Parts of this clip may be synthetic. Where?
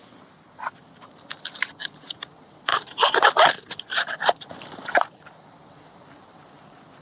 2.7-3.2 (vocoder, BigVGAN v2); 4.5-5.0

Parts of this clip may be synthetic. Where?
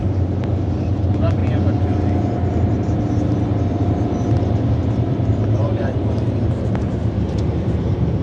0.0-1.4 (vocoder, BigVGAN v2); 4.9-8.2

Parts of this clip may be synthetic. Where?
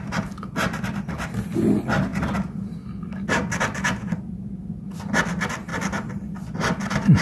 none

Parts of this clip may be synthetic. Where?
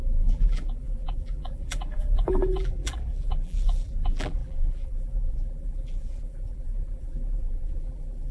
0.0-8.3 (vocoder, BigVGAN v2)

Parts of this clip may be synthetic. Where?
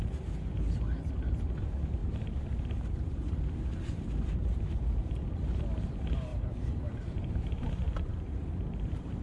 2.0-5.1 (vocoder, BigVGAN v2); 6.3-9.2